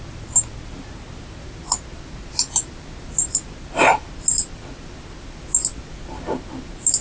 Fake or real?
real